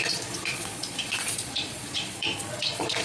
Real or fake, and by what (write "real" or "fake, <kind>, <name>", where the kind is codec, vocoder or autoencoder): fake, vocoder, Vocos